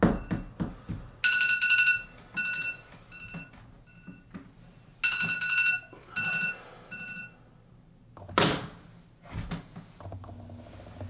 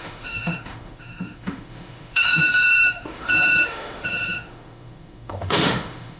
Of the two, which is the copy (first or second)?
second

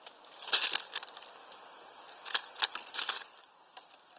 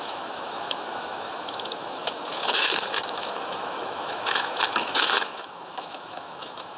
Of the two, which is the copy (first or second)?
second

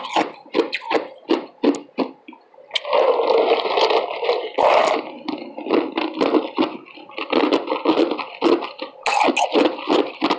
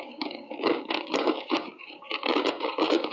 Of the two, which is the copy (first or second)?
second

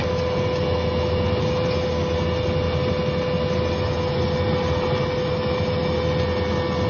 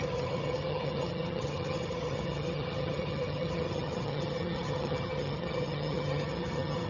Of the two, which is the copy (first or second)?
second